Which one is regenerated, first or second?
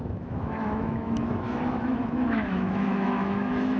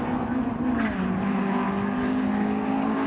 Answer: first